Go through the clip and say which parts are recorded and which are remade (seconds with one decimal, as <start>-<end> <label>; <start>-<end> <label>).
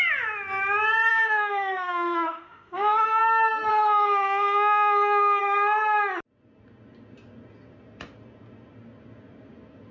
0.0-1.1 recorded; 1.1-3.2 remade; 3.2-3.7 recorded; 3.7-5.4 remade; 5.4-9.9 recorded